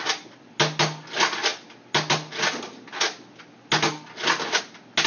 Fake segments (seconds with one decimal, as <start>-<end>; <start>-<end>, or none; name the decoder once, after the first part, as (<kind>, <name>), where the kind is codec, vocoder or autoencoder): none